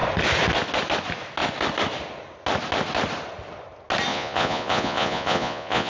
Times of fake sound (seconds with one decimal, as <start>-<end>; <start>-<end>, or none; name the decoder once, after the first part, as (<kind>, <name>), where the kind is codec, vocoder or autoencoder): 4.1-5.9 (vocoder, Vocos)